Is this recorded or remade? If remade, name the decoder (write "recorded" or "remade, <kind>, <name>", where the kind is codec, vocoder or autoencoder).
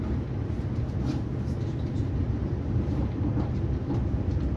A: recorded